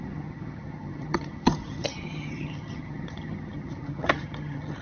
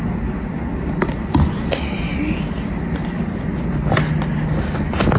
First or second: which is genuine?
second